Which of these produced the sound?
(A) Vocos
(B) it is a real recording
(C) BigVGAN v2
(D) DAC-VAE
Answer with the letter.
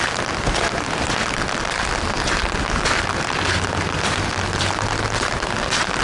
B